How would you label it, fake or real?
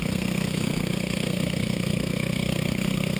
fake